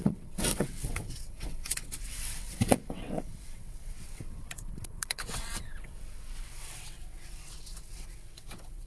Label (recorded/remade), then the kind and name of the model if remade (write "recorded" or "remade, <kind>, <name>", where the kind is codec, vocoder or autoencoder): remade, vocoder, WaveNeXt